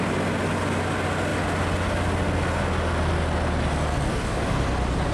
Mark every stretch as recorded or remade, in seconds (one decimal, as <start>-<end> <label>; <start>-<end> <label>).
0.0-4.1 recorded; 4.1-4.6 remade; 4.6-5.1 recorded